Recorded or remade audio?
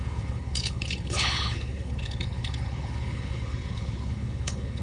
remade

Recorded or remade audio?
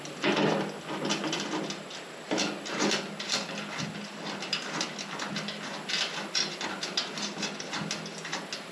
recorded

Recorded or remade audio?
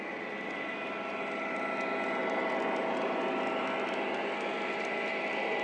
recorded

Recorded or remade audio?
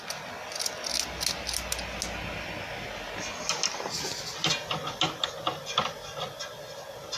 recorded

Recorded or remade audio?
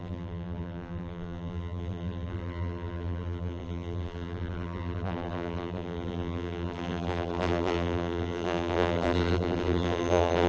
remade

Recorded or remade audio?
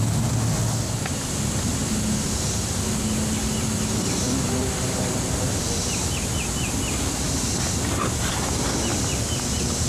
recorded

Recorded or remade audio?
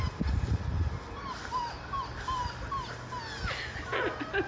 recorded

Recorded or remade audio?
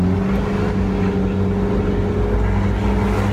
recorded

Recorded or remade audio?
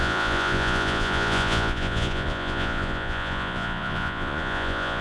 remade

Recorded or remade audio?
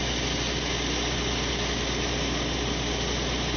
recorded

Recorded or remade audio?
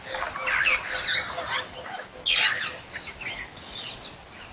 recorded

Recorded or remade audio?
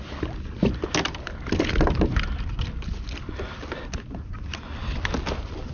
recorded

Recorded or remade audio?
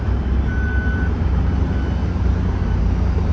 recorded